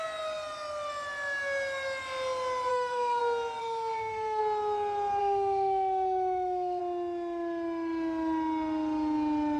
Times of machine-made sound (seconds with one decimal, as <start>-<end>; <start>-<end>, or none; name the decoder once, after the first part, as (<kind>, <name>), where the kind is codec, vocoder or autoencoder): 2.7-3.2 (autoencoder, DAC-VAE); 3.6-4.4; 5.2-6.8